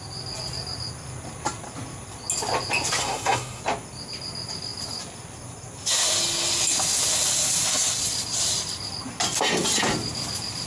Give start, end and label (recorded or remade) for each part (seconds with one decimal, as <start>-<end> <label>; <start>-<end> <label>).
0.0-3.0 recorded; 3.0-3.6 remade; 3.6-10.7 recorded